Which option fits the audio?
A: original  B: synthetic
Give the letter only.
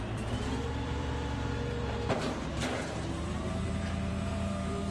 B